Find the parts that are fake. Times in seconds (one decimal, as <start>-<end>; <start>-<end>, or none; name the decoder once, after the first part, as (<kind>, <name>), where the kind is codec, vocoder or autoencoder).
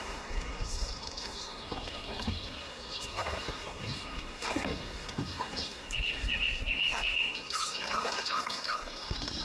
0.0-9.4 (codec, SNAC)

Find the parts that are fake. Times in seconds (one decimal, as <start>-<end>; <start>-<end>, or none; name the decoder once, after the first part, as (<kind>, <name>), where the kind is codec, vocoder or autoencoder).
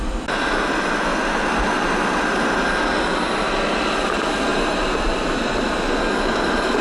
none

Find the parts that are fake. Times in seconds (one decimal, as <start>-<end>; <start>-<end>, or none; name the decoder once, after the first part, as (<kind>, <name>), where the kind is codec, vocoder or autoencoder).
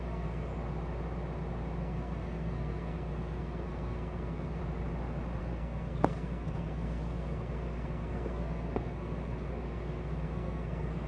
0.0-0.5 (codec, SNAC); 1.8-4.6; 5.4-11.1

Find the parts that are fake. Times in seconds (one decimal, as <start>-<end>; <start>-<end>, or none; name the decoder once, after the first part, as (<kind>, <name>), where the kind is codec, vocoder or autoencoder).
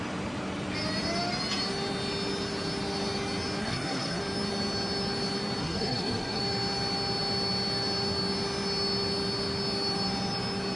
3.6-4.2 (codec, SNAC); 5.6-6.4